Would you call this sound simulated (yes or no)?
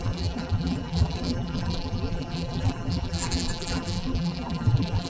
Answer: yes